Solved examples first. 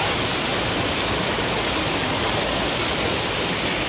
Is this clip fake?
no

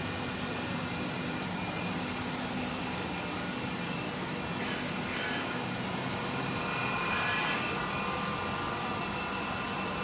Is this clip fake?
no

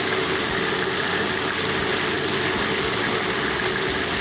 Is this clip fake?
no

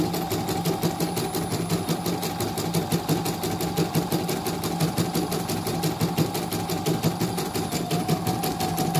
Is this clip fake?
no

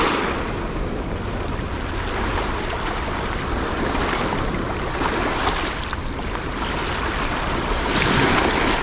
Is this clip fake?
no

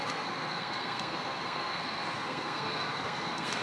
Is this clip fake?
yes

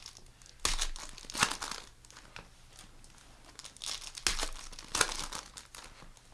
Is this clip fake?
no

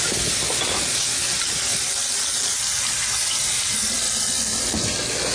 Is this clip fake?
no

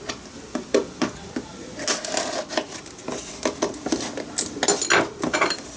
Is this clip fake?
no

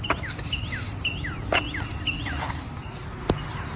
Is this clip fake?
no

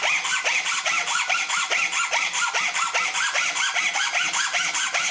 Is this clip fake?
no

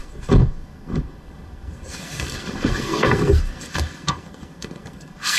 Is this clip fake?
yes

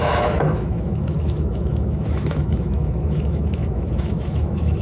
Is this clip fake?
yes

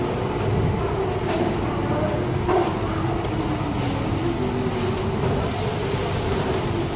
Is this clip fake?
no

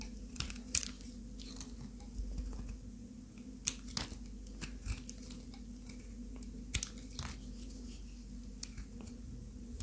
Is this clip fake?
no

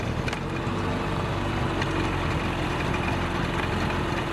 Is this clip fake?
no